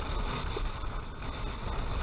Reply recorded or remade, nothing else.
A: recorded